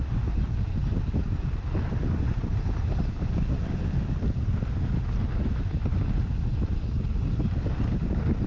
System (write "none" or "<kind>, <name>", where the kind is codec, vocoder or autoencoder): none